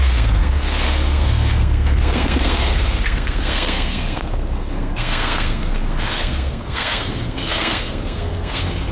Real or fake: fake